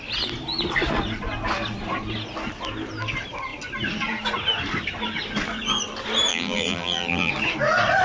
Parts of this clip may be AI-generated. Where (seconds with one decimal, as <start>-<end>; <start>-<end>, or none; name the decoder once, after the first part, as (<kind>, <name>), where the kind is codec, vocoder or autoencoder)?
6.3-7.3 (vocoder, BigVGAN v2)